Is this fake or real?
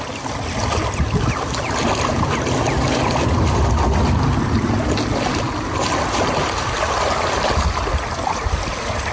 real